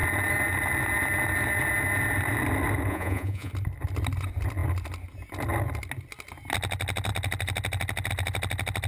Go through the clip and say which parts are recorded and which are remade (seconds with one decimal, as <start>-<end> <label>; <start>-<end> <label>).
0.0-2.9 recorded; 2.9-3.5 remade; 3.5-8.9 recorded